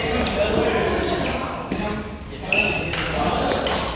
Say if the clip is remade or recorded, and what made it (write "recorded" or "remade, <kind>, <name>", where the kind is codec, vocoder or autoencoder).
recorded